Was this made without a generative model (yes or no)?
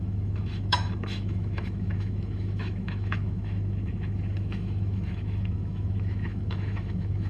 no